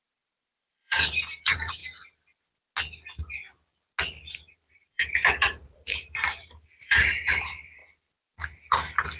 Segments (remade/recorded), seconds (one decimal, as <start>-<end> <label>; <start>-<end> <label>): 0.0-1.8 remade; 1.8-4.5 recorded; 4.5-7.8 remade; 7.8-9.2 recorded